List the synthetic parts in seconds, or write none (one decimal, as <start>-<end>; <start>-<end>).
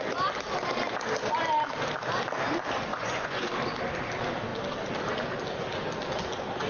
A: 2.9-3.5